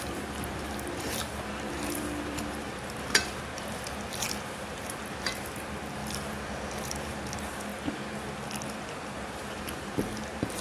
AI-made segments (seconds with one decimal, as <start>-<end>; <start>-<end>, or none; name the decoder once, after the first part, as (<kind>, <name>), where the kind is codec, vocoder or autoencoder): 0.0-6.0 (vocoder, BigVGAN v2); 6.9-7.7; 8.7-10.6